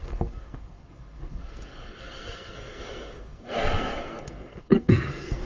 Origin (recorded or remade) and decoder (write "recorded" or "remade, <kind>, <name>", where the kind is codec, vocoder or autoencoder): remade, codec, SNAC